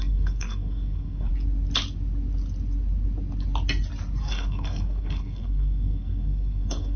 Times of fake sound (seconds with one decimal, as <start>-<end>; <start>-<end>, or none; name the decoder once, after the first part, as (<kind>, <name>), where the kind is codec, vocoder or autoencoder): 0.0-1.3 (codec, SNAC); 4.2-7.0